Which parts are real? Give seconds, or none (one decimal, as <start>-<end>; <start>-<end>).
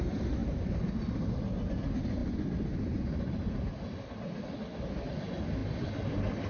0.0-6.5